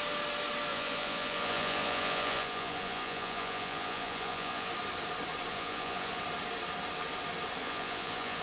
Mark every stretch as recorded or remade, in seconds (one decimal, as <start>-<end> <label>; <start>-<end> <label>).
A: 0.0-0.7 recorded; 0.7-4.7 remade; 4.7-5.5 recorded; 5.5-6.2 remade; 6.2-7.6 recorded; 7.6-8.4 remade